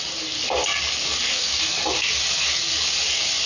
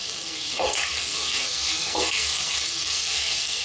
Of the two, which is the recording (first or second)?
first